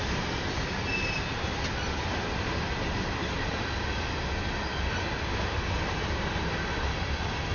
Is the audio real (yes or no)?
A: yes